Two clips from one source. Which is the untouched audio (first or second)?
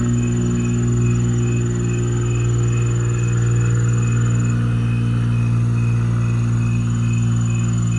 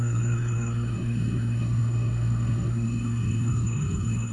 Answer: first